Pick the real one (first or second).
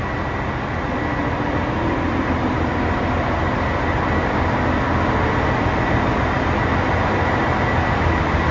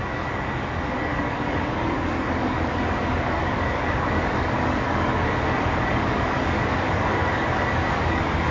first